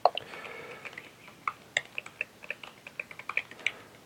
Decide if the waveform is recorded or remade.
recorded